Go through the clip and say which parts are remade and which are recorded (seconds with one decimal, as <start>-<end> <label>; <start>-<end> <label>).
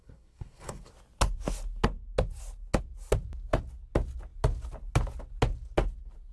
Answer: 0.0-0.9 remade; 0.9-6.3 recorded